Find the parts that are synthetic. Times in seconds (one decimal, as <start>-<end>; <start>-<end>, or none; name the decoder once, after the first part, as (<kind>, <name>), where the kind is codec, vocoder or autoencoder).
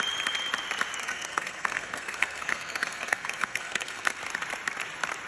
1.0-4.2 (codec, SNAC)